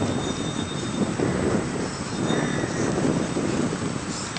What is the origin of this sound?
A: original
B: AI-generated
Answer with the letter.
A